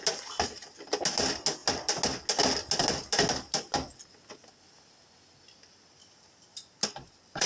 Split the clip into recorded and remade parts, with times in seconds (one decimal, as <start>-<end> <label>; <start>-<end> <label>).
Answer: 0.0-7.5 recorded